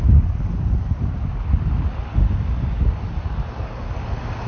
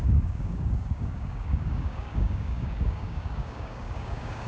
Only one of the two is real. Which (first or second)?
first